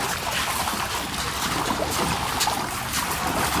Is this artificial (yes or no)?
yes